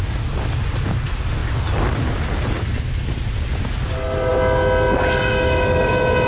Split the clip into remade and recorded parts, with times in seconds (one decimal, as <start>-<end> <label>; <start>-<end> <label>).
0.0-6.3 recorded